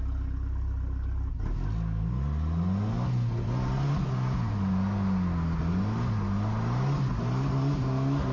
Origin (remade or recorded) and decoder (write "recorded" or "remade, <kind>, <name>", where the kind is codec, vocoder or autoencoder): recorded